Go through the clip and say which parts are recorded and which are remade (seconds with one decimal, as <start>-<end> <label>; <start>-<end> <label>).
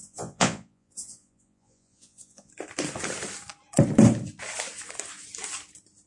0.0-2.5 remade; 2.5-6.1 recorded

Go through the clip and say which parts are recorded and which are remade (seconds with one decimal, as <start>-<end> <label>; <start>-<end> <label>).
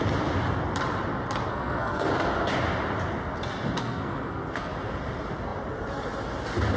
0.0-1.5 recorded; 1.5-2.1 remade; 2.1-3.8 recorded; 3.8-4.7 remade; 4.7-6.8 recorded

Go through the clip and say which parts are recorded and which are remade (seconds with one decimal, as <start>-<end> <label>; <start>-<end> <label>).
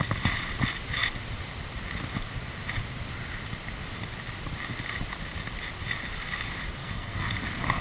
0.0-6.8 recorded; 6.8-7.3 remade; 7.3-7.8 recorded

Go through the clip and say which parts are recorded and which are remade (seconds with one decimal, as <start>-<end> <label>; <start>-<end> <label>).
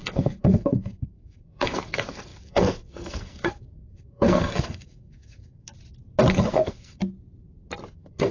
0.0-5.7 remade; 5.7-6.3 recorded; 6.3-7.0 remade; 7.0-7.9 recorded; 7.9-8.3 remade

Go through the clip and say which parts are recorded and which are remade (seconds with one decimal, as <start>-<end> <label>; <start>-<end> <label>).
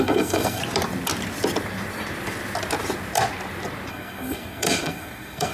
0.0-0.6 remade; 0.6-3.9 recorded; 3.9-5.5 remade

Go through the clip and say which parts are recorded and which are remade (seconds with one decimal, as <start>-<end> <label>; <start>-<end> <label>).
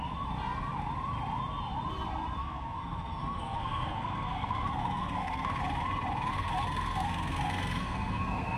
0.0-2.4 recorded; 2.4-5.6 remade; 5.6-6.3 recorded; 6.3-8.6 remade